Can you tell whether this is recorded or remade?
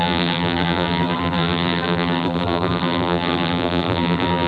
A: remade